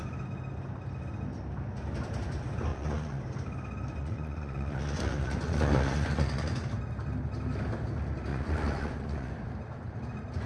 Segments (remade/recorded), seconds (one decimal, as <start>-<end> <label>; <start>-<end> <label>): 0.0-2.7 recorded; 2.7-3.2 remade; 3.2-4.0 recorded; 4.0-6.6 remade; 6.6-8.3 recorded; 8.3-9.3 remade; 9.3-10.5 recorded